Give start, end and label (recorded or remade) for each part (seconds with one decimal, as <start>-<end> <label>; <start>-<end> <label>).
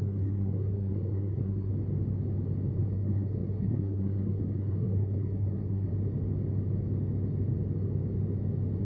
0.0-1.7 remade; 1.7-2.8 recorded; 2.8-5.9 remade; 5.9-8.8 recorded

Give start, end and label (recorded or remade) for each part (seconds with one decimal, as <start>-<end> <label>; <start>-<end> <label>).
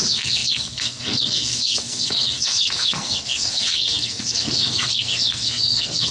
0.0-6.1 remade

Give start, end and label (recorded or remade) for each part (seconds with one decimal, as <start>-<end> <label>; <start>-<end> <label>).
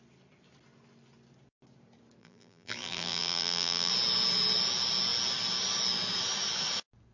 0.0-2.2 recorded; 2.2-3.9 remade; 3.9-7.1 recorded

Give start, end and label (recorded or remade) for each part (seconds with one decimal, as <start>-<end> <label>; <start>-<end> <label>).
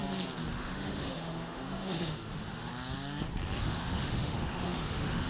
0.0-0.5 recorded; 0.5-2.7 remade; 2.7-3.6 recorded; 3.6-5.3 remade